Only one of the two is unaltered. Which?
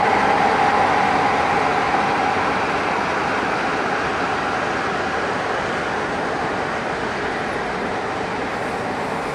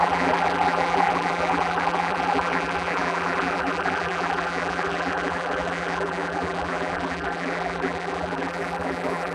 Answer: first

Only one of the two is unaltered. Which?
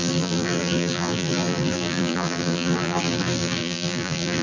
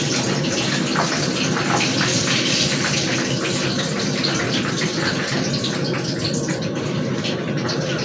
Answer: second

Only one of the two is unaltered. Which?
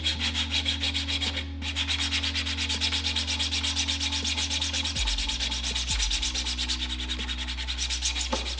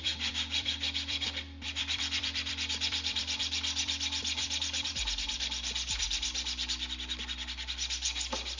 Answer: first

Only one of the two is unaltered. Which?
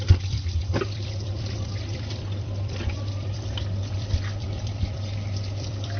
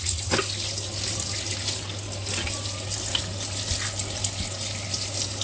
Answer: second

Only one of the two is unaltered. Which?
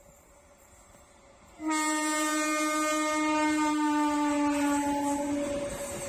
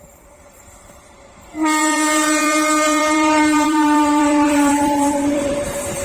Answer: first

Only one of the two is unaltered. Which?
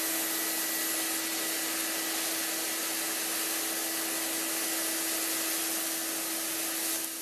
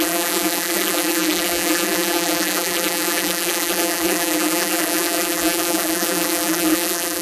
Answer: first